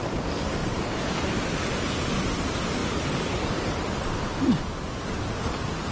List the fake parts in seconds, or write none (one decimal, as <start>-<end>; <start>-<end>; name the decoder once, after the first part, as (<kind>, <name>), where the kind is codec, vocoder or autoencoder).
2.8-5.3 (vocoder, BigVGAN v2)